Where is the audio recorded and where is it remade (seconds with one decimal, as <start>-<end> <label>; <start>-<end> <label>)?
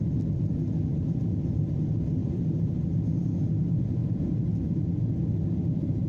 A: 0.0-6.1 recorded